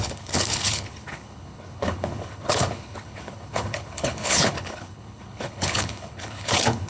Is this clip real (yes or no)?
no